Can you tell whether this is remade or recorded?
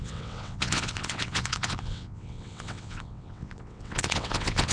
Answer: remade